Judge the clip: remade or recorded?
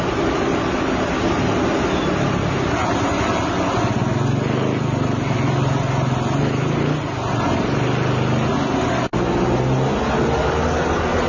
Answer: recorded